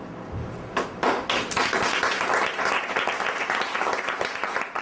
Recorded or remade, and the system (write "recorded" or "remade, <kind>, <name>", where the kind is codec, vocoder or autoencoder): recorded